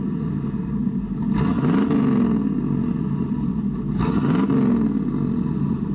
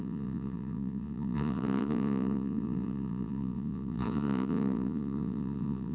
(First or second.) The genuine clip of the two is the first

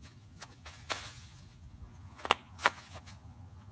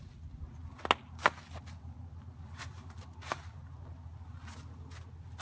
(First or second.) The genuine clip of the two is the second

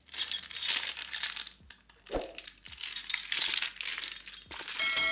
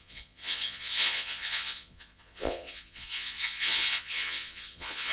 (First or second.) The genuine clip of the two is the first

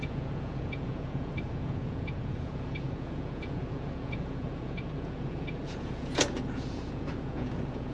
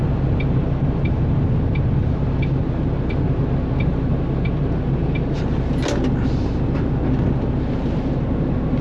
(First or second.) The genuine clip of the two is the second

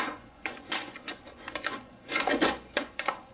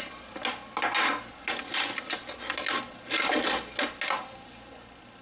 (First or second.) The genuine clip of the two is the second